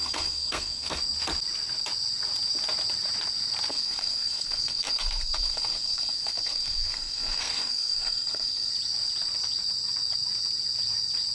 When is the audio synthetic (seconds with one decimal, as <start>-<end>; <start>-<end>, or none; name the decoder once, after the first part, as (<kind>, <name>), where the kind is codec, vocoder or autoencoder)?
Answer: 0.0-1.0 (codec, SNAC); 3.7-8.7